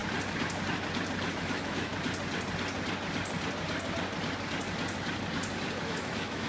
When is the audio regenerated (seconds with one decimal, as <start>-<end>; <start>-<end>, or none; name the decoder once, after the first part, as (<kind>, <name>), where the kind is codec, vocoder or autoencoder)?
1.3-1.9 (autoencoder, DAC-VAE); 5.8-6.5

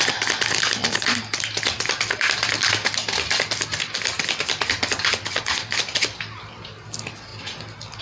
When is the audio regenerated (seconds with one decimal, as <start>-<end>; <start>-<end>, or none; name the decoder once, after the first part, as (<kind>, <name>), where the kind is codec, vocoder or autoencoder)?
none

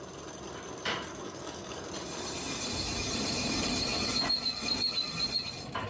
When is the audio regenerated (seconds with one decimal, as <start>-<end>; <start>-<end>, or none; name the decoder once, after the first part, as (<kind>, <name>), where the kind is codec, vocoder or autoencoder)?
1.1-1.9 (codec, DAC)

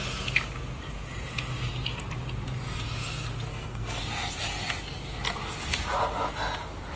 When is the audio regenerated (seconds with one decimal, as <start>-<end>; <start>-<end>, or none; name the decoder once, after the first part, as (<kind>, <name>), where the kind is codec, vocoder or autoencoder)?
3.5-4.0 (codec, SNAC)

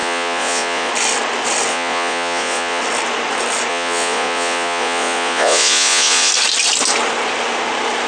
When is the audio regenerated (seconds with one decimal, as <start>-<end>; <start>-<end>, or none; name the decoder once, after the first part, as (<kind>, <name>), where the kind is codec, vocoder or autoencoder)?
0.0-0.9 (vocoder, Vocos); 1.7-2.8; 3.7-6.3

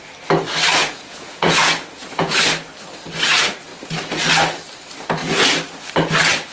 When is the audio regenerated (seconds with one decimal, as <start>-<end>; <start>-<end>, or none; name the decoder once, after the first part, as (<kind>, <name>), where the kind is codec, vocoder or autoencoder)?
0.8-2.4 (vocoder, Vocos)

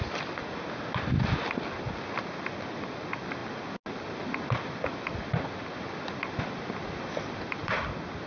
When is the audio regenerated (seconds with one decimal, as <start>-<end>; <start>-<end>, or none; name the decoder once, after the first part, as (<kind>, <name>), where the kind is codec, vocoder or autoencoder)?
7.6-8.3 (vocoder, BigVGAN v2)